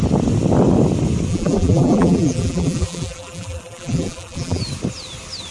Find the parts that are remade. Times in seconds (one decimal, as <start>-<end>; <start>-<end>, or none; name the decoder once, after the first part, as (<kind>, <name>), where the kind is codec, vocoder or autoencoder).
1.3-4.6 (vocoder, BigVGAN v2)